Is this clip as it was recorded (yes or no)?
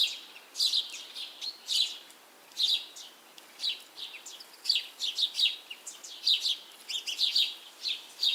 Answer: yes